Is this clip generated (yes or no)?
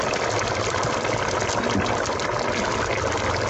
no